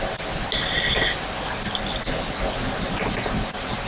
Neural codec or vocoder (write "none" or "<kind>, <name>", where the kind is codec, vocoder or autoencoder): none